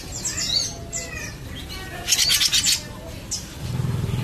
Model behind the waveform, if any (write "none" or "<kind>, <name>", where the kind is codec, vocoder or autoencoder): none